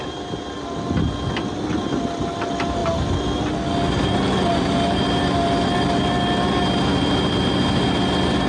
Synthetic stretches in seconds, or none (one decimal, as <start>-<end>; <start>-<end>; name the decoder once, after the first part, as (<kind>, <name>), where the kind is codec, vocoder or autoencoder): none